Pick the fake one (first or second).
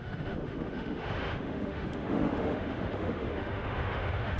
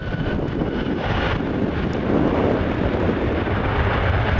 first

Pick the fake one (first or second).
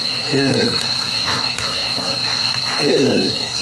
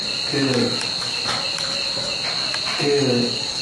first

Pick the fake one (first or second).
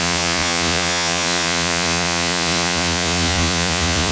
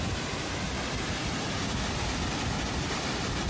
first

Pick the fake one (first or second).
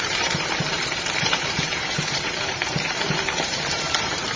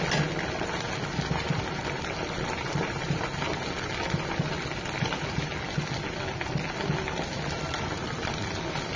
first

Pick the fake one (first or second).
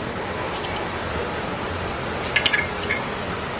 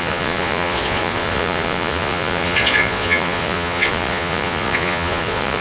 second